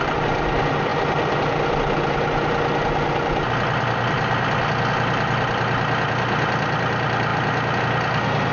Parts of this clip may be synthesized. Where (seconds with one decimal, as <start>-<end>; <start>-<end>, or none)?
none